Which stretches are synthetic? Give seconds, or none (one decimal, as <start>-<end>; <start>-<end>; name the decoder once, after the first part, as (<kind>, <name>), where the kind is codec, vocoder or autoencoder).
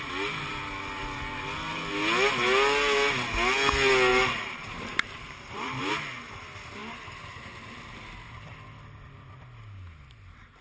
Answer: 4.1-5.9 (vocoder, BigVGAN v2)